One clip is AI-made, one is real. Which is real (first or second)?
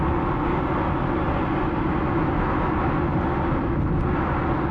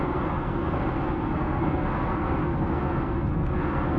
first